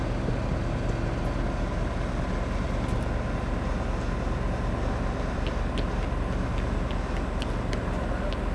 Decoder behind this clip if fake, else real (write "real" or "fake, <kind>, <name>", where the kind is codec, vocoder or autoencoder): real